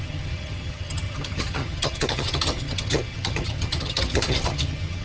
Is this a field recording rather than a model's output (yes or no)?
no